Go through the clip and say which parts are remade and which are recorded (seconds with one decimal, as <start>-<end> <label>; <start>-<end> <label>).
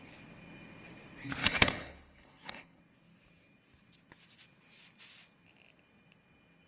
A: 0.0-1.4 recorded; 1.4-2.8 remade; 2.8-6.7 recorded